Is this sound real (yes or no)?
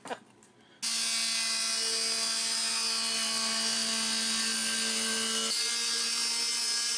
yes